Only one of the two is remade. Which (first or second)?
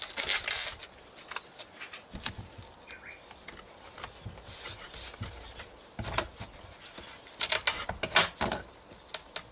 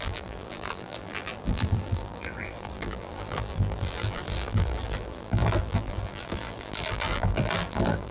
second